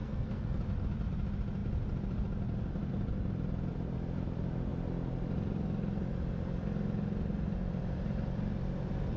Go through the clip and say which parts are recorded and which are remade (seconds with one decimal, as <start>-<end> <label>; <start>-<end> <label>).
0.0-0.6 remade; 0.6-9.2 recorded